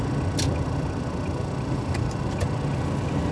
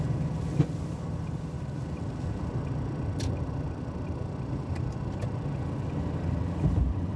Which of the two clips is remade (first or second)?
second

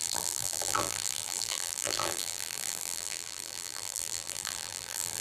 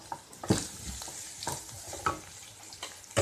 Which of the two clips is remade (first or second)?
first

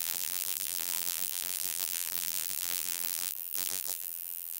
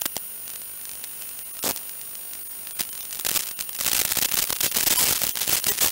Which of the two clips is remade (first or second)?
first